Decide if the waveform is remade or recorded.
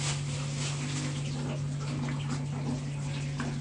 recorded